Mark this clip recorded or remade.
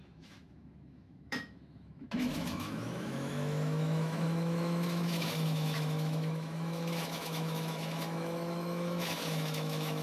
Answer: remade